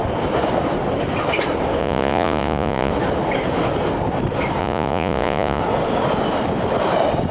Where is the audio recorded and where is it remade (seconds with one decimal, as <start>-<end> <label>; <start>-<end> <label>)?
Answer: 0.0-1.8 recorded; 1.8-2.9 remade; 2.9-4.6 recorded; 4.6-5.6 remade; 5.6-7.3 recorded